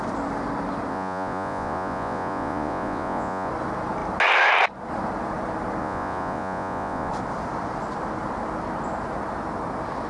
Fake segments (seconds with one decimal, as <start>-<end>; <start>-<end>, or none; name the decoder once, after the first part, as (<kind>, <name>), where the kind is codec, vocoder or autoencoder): 0.9-3.5 (vocoder, Vocos); 5.8-7.1